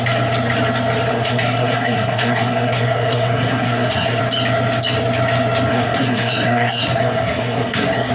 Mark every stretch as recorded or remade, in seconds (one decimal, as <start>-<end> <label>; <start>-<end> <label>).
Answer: 0.0-1.1 recorded; 1.1-4.2 remade; 4.2-5.7 recorded; 5.7-8.1 remade